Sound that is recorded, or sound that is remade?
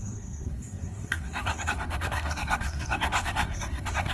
remade